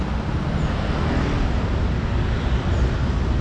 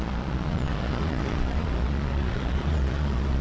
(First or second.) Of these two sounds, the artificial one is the second